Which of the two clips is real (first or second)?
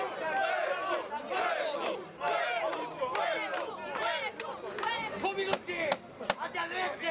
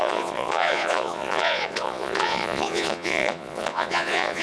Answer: first